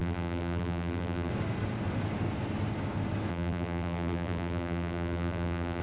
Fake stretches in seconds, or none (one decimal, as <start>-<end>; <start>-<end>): 0.0-1.3; 3.3-5.8